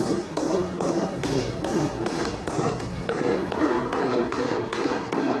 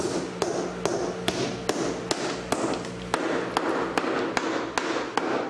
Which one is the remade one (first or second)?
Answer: first